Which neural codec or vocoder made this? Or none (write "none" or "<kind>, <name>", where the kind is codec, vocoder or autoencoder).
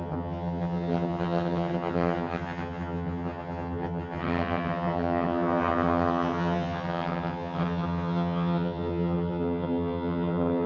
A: vocoder, HiFi-GAN